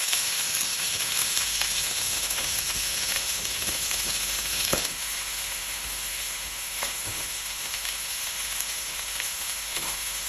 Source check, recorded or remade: remade